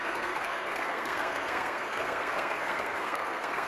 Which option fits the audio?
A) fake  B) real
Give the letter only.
A